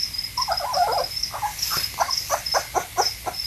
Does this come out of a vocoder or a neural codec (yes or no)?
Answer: no